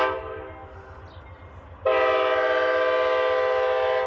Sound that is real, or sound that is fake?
real